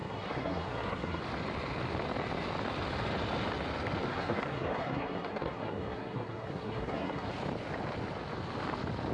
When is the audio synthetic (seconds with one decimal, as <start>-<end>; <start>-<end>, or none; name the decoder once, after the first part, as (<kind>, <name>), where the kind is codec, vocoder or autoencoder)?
0.0-1.2 (codec, SNAC); 4.1-7.3